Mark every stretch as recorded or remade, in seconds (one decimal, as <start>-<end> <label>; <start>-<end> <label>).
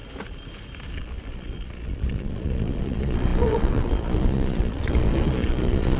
0.0-1.0 recorded; 1.0-6.0 remade